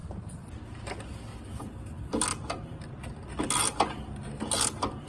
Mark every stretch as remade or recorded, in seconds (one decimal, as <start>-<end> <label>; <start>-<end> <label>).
0.0-0.5 remade; 0.5-1.3 recorded; 1.3-4.4 remade; 4.4-5.1 recorded